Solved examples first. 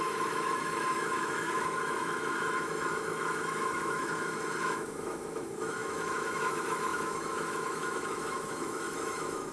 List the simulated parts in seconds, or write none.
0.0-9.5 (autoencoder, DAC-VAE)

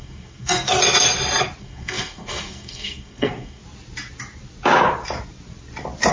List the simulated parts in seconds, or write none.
0.0-0.8 (codec, SNAC); 1.6-3.6

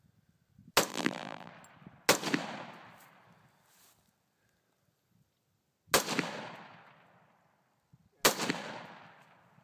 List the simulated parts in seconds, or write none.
0.9-1.5 (vocoder, BigVGAN v2)

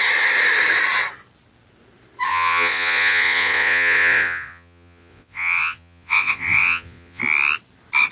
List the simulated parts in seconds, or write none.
2.3-7.2 (vocoder, Vocos)

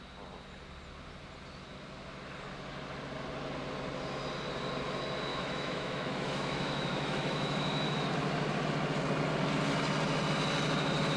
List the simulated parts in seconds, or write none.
5.3-8.1 (autoencoder, DAC-VAE)